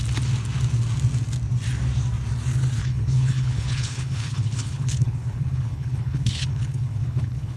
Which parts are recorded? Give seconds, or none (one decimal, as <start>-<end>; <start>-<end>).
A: 0.0-2.8